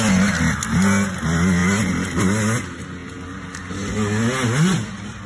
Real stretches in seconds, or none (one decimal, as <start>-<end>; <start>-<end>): 0.0-5.3